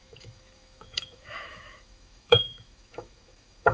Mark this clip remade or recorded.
remade